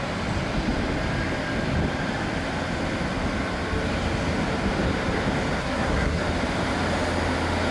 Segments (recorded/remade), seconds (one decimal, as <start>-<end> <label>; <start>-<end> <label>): 0.0-5.6 recorded; 5.6-6.2 remade; 6.2-7.7 recorded